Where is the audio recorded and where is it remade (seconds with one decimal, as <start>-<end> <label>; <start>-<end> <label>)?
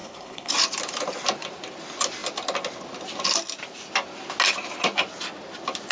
0.0-0.5 remade; 0.5-5.9 recorded